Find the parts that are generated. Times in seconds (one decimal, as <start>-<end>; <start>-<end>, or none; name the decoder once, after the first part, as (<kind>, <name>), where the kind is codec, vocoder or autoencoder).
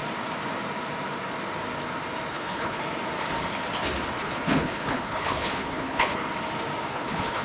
2.3-2.8 (codec, HILCodec); 4.2-6.2; 6.9-7.4